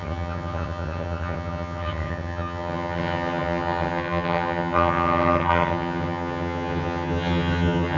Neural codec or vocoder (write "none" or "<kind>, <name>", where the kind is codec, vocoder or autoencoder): vocoder, HiFi-GAN